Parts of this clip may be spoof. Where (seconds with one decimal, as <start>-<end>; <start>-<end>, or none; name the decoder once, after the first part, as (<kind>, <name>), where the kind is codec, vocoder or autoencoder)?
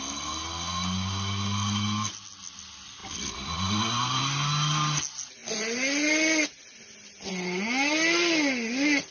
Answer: none